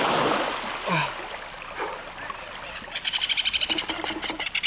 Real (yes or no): yes